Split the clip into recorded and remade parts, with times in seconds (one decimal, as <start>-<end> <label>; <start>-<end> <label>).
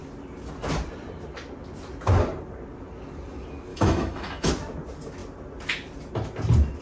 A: 0.0-3.7 recorded; 3.7-4.5 remade; 4.5-6.8 recorded